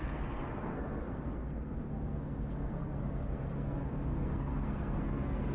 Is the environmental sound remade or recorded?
remade